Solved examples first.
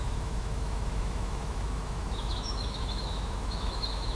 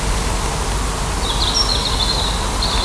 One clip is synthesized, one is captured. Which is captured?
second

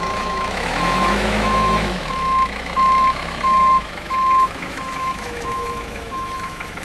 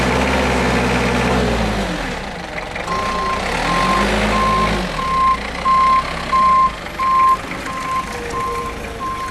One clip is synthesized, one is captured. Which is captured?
second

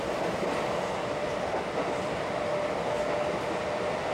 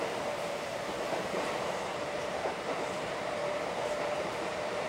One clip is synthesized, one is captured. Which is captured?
first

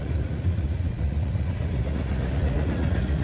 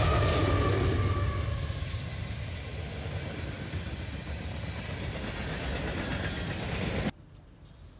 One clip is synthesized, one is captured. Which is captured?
second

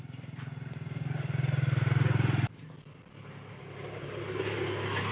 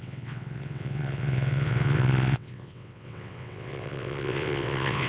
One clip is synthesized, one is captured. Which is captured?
first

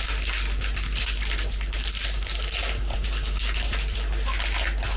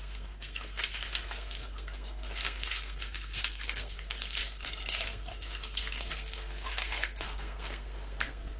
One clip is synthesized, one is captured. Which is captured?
first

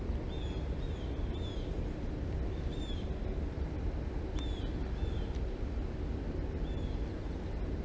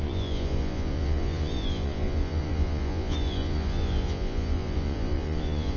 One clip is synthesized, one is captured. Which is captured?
first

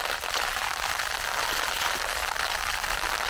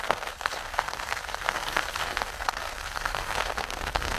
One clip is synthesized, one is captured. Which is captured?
first